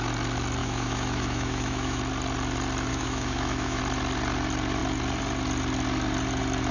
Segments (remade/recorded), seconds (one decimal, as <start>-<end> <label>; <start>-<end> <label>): 0.0-0.6 recorded; 0.6-2.0 remade; 2.0-2.9 recorded; 2.9-3.8 remade; 3.8-6.7 recorded